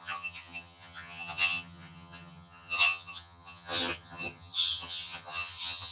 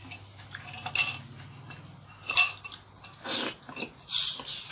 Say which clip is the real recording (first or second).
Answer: second